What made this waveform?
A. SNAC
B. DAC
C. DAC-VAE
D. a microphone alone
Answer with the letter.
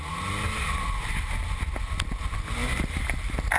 D